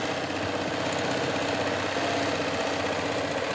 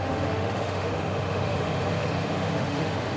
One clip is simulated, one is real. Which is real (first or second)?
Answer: first